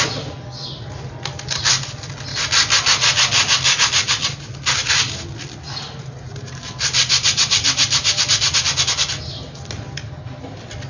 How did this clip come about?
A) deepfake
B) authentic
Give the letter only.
B